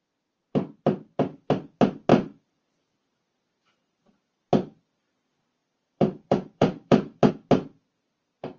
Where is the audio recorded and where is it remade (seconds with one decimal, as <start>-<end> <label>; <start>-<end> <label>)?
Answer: 0.0-2.1 recorded; 2.1-2.6 remade; 2.6-5.6 recorded; 5.6-7.3 remade; 7.3-8.6 recorded